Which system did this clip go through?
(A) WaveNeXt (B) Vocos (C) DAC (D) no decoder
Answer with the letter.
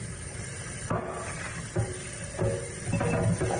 D